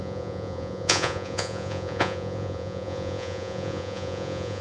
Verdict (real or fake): fake